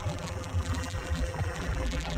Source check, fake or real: fake